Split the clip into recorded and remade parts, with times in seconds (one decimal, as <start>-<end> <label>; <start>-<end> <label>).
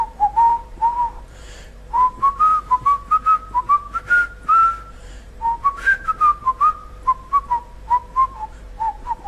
0.0-2.5 remade; 2.5-4.9 recorded; 4.9-9.3 remade